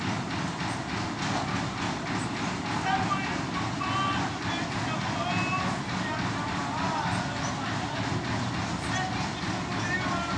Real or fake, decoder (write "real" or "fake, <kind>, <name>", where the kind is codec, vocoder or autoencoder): real